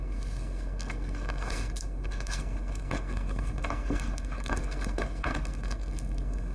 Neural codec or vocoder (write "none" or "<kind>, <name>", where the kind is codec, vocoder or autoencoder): codec, SNAC